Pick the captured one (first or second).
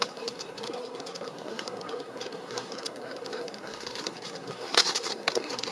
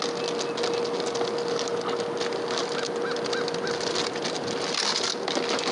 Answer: second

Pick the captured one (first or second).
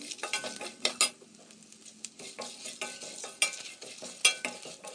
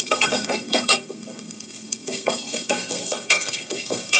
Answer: first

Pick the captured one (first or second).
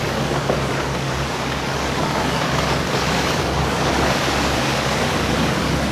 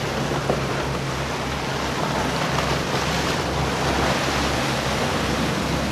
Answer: second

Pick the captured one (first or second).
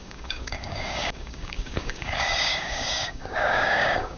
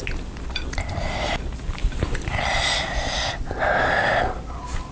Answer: second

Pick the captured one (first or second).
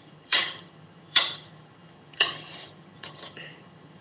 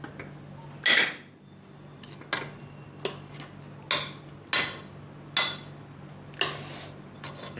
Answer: second